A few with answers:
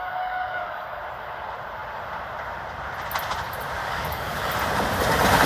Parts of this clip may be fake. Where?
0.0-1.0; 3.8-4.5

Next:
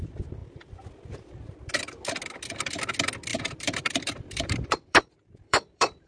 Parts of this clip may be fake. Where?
3.3-6.1

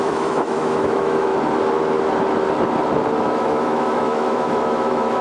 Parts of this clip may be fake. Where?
0.0-1.3; 3.2-5.2

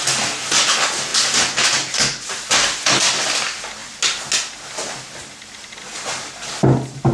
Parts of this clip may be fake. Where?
none